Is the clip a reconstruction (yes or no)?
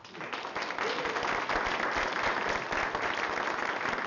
no